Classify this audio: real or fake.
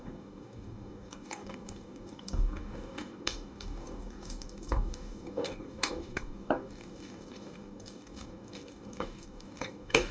fake